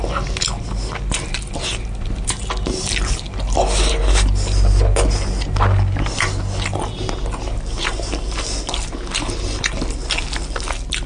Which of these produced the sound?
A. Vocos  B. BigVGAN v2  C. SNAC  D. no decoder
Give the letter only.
D